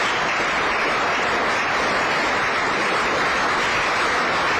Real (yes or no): yes